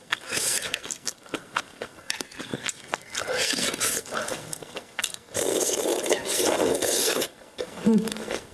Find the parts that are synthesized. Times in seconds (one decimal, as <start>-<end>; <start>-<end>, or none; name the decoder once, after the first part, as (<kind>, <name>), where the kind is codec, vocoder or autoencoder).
0.0-8.5 (codec, SNAC)